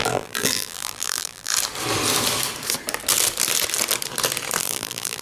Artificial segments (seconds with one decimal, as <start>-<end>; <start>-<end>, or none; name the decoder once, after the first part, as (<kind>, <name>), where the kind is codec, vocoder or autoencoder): 0.0-1.5 (vocoder, BigVGAN v2); 4.6-5.2

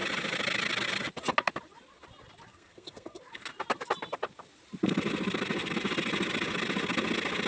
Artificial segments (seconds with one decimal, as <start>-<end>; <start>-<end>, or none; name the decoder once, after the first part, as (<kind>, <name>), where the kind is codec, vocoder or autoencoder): 2.5-3.2 (codec, SNAC)

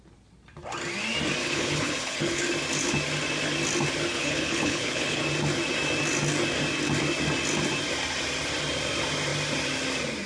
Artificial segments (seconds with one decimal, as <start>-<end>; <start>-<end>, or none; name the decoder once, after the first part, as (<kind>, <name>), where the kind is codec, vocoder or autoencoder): 1.4-2.4 (codec, HILCodec); 4.1-5.2

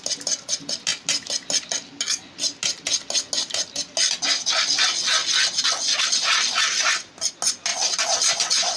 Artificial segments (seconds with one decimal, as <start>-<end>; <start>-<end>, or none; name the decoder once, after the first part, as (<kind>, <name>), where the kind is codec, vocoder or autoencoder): none